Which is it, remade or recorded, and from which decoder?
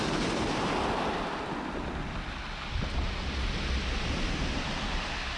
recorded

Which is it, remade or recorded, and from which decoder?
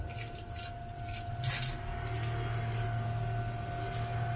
recorded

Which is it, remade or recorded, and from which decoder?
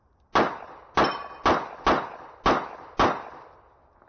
recorded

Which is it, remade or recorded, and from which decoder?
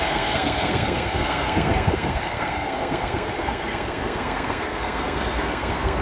remade, codec, SNAC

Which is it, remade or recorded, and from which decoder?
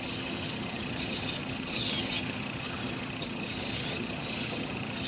remade, vocoder, HiFi-GAN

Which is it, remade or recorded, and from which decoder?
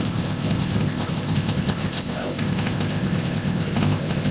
remade, codec, ZipCodec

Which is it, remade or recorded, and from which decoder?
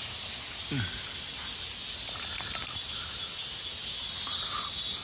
recorded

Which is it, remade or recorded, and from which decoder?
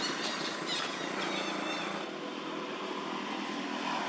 remade, vocoder, BigVGAN v2